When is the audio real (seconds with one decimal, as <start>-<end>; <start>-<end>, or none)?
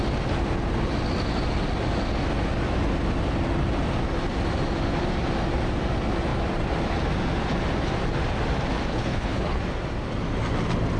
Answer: 0.0-8.9; 9.6-11.0